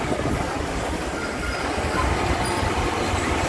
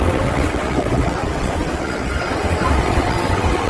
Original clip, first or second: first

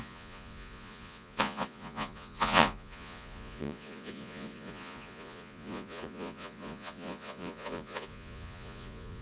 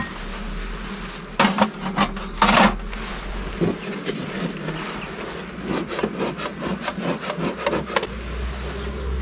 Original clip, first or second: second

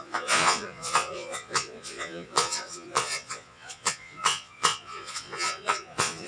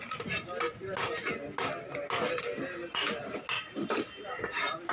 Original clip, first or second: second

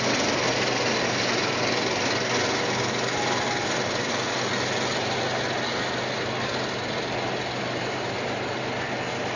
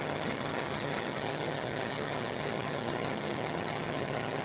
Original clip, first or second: first